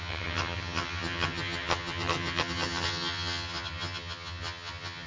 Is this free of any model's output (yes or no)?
no